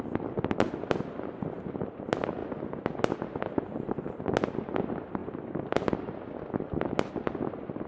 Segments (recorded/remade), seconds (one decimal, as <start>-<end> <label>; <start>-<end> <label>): 0.0-7.9 recorded